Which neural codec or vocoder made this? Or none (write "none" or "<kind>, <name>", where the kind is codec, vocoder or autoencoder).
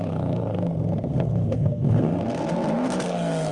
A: codec, SNAC